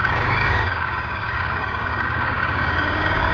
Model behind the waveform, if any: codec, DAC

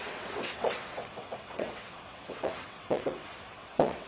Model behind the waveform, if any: vocoder, WaveNeXt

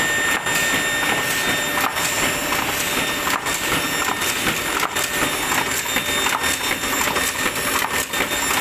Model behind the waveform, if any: none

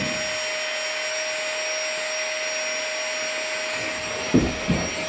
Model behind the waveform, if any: none